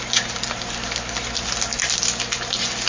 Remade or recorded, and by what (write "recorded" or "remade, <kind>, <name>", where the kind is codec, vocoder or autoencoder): recorded